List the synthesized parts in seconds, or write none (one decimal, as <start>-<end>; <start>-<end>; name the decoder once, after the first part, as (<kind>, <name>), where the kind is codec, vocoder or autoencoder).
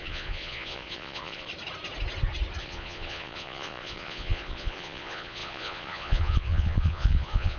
0.0-1.5 (vocoder, Vocos); 2.6-7.6